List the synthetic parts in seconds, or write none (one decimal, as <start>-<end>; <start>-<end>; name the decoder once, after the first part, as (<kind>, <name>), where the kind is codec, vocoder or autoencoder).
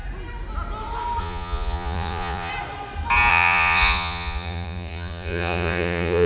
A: 1.2-2.5 (vocoder, Vocos); 3.3-6.3